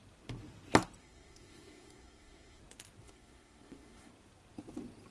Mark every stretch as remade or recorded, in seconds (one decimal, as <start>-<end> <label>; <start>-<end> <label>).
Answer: 0.0-1.0 recorded; 1.0-2.6 remade; 2.6-3.0 recorded; 3.0-4.1 remade; 4.1-5.1 recorded